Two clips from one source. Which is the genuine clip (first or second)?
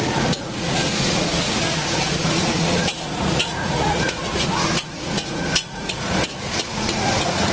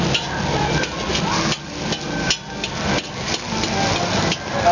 second